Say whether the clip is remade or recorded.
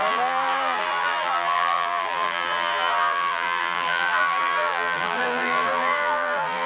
remade